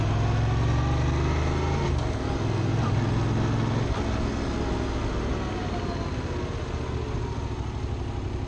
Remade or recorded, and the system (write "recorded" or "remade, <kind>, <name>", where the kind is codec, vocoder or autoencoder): recorded